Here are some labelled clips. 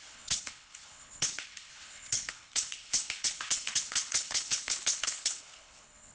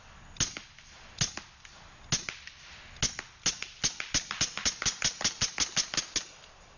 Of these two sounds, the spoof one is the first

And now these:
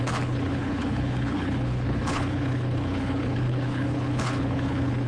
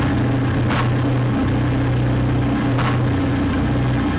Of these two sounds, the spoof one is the first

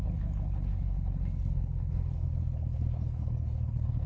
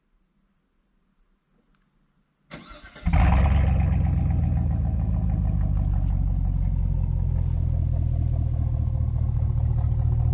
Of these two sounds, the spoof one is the first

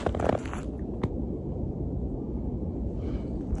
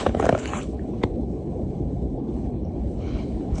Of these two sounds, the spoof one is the second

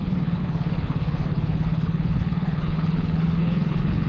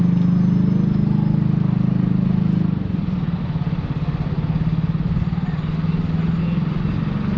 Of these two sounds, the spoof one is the first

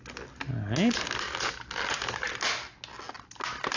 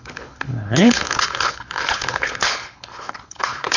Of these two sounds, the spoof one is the second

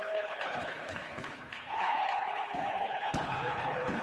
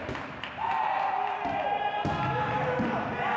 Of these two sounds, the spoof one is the first